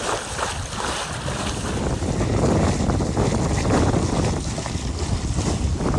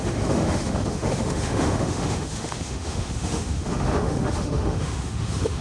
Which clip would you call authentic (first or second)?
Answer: first